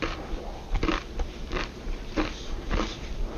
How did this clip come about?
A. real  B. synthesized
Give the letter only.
B